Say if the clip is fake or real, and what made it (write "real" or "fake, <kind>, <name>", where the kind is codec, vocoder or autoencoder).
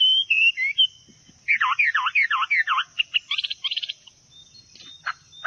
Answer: real